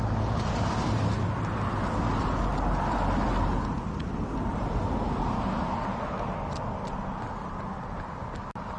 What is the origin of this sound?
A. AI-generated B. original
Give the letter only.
B